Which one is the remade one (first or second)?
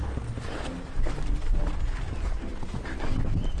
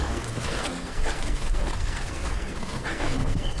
second